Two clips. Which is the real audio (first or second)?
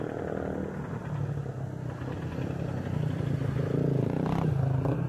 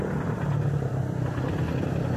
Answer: first